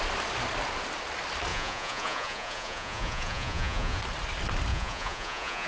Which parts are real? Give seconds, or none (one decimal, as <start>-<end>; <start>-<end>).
0.0-1.5; 4.0-4.7

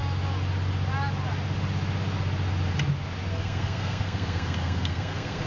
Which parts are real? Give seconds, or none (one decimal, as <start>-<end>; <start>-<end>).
0.0-3.3

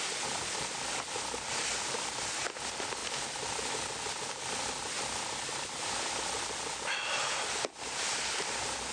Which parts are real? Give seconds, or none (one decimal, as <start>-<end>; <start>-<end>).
0.0-8.9

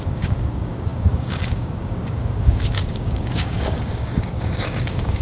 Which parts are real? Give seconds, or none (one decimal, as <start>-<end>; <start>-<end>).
none

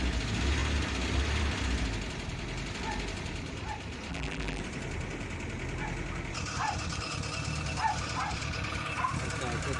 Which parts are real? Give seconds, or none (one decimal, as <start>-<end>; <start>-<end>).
0.0-4.1; 4.6-9.8

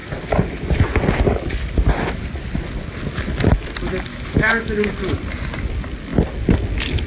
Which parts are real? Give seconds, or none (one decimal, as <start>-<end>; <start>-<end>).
0.0-4.1; 4.9-7.1